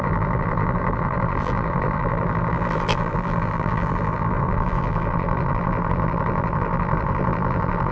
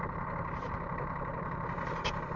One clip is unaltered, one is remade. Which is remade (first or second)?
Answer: first